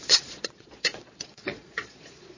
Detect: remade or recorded remade